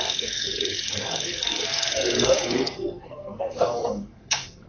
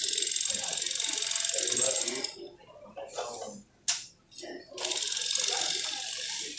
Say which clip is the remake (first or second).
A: first